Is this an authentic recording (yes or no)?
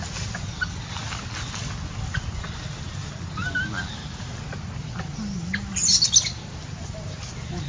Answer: yes